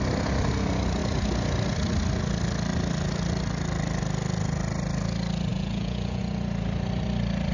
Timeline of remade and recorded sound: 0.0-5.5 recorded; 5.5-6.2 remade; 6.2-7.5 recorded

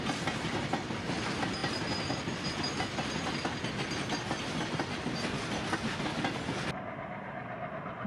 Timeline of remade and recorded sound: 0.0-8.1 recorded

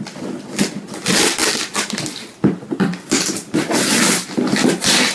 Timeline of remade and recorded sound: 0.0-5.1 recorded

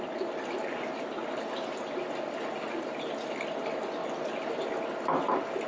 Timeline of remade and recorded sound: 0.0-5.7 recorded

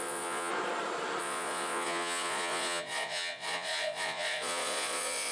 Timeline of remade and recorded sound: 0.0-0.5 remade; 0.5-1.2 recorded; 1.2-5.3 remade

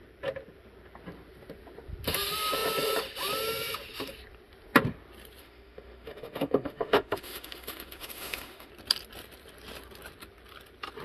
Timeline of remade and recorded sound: 0.0-5.4 recorded; 5.4-8.7 remade; 8.7-11.0 recorded